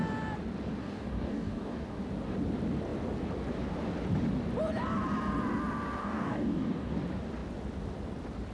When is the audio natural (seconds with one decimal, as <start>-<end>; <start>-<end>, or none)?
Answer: 0.0-0.8; 2.0-6.0; 6.9-8.5

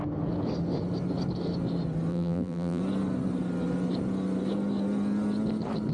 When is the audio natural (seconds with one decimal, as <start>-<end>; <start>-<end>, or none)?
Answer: 0.0-2.1; 2.8-5.9

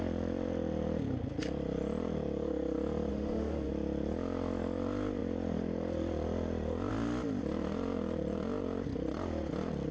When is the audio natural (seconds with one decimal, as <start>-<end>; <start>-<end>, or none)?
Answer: 0.0-3.1; 3.7-9.9

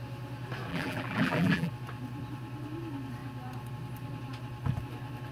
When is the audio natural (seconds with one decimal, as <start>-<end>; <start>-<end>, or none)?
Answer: 0.0-0.7; 1.7-5.3

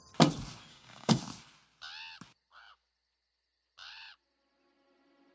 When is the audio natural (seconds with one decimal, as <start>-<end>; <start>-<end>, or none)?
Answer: 0.0-0.7; 1.2-5.3